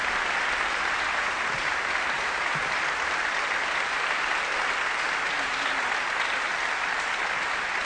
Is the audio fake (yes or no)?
no